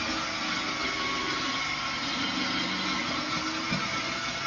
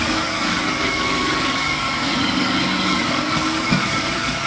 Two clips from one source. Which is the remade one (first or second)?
second